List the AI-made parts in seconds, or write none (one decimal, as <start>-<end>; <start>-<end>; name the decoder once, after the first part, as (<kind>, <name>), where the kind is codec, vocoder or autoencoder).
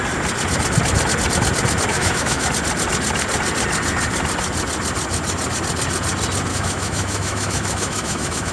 1.9-2.5 (autoencoder, DAC-VAE); 6.5-8.5